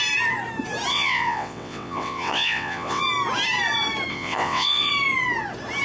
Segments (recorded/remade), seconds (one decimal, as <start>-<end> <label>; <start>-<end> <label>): 0.0-0.9 recorded; 0.9-3.0 remade; 3.0-4.1 recorded; 4.1-4.9 remade; 4.9-5.8 recorded